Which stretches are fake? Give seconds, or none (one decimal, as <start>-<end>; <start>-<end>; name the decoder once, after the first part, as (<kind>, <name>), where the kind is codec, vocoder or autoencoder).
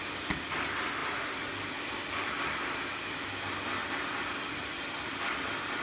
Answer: none